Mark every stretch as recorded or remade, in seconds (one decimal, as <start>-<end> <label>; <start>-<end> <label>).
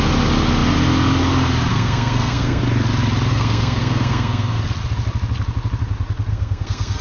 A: 0.0-1.7 recorded; 1.7-2.6 remade; 2.6-3.3 recorded; 3.3-4.6 remade; 4.6-6.3 recorded; 6.3-7.0 remade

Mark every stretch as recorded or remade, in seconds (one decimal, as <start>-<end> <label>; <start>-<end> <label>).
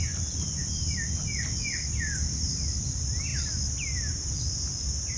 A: 0.0-5.2 recorded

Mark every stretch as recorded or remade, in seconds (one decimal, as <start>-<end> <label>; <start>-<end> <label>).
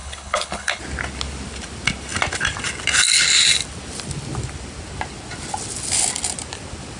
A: 0.0-0.8 remade; 0.8-7.0 recorded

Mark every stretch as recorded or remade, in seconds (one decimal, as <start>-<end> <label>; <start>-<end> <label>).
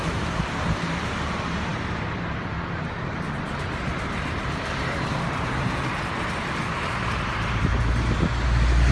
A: 0.0-7.7 remade; 7.7-8.9 recorded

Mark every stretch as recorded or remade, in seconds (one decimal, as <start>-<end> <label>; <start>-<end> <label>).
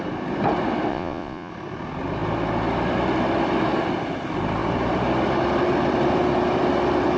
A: 0.0-0.9 recorded; 0.9-1.5 remade; 1.5-7.2 recorded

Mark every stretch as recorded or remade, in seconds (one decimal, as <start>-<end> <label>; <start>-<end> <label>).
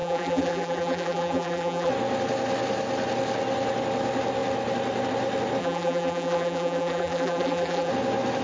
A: 0.0-1.9 remade; 1.9-5.6 recorded; 5.6-7.9 remade; 7.9-8.4 recorded